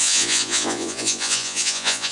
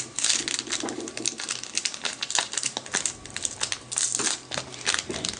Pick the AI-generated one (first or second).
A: first